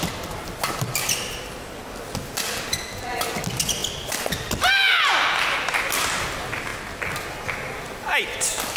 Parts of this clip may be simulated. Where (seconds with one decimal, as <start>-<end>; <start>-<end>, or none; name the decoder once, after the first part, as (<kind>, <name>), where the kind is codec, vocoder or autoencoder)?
none